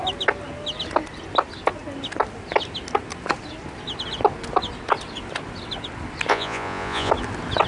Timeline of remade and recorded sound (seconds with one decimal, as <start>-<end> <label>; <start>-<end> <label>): 0.0-6.3 recorded; 6.3-7.1 remade; 7.1-7.7 recorded